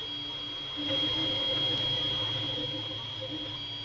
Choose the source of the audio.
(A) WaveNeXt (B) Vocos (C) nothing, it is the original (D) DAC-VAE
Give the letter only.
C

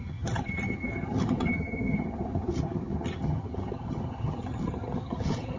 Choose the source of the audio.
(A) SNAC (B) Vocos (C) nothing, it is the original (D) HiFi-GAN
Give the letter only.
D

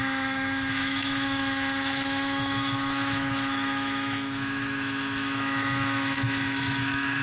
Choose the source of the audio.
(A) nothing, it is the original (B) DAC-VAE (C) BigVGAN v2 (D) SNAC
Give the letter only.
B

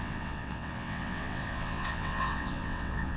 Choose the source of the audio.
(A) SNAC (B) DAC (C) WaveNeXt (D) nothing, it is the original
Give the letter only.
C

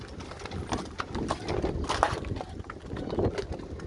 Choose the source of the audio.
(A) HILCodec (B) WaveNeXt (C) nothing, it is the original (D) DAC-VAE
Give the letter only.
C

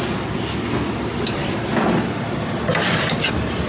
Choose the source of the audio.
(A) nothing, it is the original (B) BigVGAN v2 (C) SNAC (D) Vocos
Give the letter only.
A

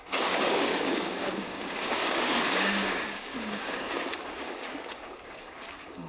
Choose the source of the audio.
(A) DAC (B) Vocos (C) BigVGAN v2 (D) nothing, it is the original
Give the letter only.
A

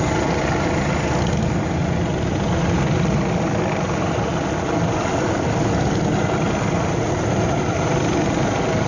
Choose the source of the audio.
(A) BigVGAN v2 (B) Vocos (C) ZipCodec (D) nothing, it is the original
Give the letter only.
D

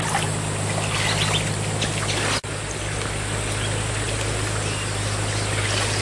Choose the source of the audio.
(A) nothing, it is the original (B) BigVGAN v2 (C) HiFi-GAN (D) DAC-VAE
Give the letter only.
A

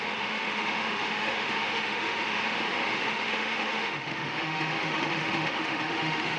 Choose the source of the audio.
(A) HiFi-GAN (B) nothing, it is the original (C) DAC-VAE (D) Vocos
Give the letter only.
C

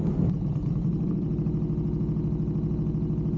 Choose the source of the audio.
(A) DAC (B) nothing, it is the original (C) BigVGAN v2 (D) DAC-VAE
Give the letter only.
B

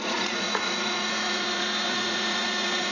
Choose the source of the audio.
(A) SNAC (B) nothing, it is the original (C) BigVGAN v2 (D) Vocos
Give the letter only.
D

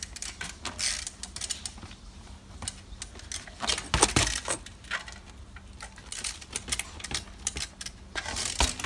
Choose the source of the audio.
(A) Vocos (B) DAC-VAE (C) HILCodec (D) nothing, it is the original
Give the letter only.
D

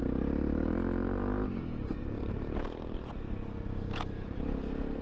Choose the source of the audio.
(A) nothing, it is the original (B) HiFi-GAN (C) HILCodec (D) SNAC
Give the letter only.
A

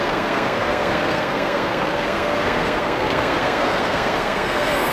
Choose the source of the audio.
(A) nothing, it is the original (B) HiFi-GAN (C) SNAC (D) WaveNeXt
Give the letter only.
C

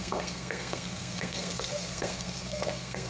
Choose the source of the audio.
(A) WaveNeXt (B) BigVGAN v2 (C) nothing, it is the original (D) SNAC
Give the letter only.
D